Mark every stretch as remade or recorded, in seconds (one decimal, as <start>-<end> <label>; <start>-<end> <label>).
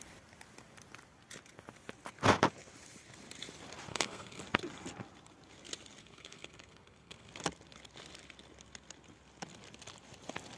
0.0-3.9 recorded; 3.9-4.4 remade; 4.4-6.0 recorded; 6.0-7.3 remade; 7.3-10.6 recorded